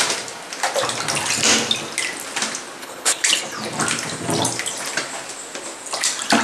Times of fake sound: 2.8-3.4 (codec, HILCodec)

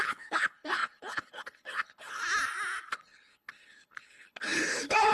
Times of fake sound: 0.0-2.2 (codec, HILCodec); 2.9-5.1

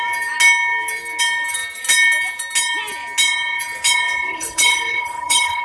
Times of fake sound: 4.3-5.6 (codec, HILCodec)

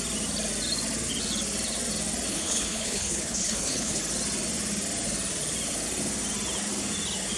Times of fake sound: 2.3-4.0 (codec, HILCodec)